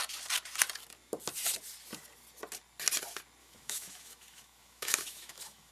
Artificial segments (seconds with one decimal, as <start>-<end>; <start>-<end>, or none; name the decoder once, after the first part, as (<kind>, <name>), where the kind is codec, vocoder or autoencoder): 3.4-5.7 (autoencoder, DAC-VAE)